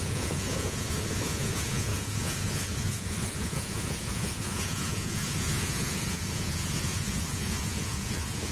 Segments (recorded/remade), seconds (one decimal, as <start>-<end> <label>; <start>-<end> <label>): 0.0-8.5 remade